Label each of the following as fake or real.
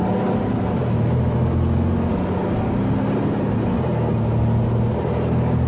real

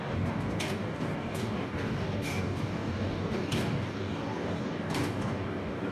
fake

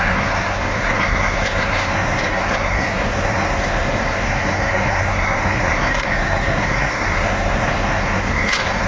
fake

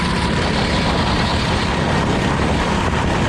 real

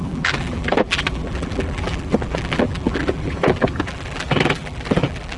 fake